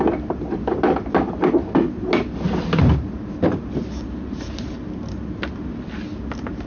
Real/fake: real